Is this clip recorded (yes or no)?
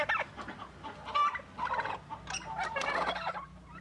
yes